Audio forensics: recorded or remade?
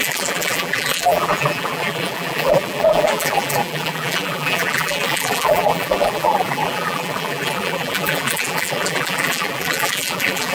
remade